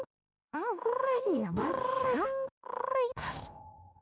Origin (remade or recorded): remade